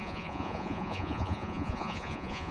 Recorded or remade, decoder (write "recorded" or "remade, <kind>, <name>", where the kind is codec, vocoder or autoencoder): remade, vocoder, Vocos